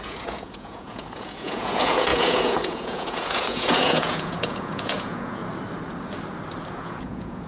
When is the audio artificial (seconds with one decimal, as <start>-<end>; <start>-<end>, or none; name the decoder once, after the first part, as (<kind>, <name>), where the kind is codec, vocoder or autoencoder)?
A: 0.0-5.4 (vocoder, Vocos); 6.7-7.5